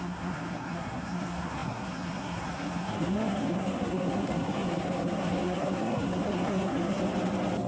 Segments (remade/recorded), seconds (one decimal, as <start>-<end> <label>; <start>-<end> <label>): 0.0-7.0 remade; 7.0-7.7 recorded